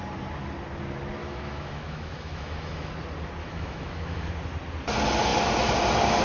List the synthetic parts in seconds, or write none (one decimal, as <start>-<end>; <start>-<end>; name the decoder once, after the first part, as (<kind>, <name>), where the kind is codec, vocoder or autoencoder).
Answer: 1.2-2.9 (autoencoder, DAC-VAE); 3.4-4.3

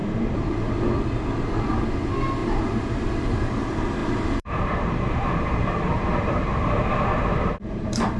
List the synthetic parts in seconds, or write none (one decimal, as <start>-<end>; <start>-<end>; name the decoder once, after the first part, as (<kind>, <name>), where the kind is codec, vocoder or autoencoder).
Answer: 0.0-0.7 (vocoder, BigVGAN v2); 2.4-3.5; 4.0-8.2

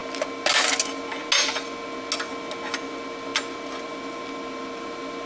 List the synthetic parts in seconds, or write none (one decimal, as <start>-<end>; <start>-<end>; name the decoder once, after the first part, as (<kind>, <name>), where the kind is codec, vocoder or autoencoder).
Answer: none

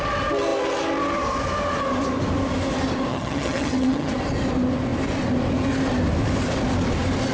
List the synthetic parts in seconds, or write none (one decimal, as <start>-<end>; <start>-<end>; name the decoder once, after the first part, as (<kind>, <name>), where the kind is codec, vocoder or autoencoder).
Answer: 3.1-4.1 (vocoder, HiFi-GAN)

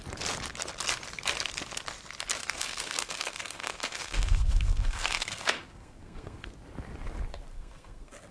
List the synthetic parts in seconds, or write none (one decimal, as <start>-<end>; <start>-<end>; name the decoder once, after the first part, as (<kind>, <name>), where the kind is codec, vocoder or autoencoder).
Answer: 2.4-6.5 (codec, SNAC); 7.5-8.3

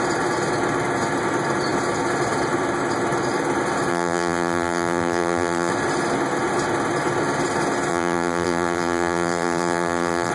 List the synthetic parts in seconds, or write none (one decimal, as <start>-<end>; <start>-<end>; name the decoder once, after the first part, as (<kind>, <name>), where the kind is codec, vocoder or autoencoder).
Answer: 3.9-5.7 (vocoder, BigVGAN v2); 7.9-10.3